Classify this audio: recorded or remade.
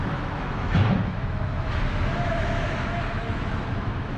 remade